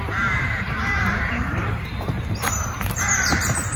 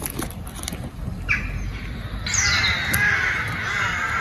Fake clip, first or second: first